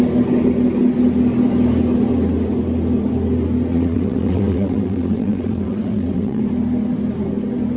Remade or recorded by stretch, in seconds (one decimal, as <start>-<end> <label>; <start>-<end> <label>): 0.0-3.7 recorded; 3.7-6.4 remade; 6.4-7.8 recorded